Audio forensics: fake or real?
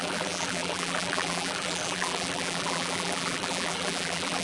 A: fake